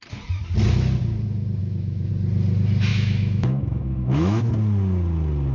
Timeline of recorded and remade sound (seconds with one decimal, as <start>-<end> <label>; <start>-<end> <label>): 0.0-1.6 recorded; 1.6-2.1 remade; 2.1-2.9 recorded; 2.9-4.5 remade; 4.5-5.5 recorded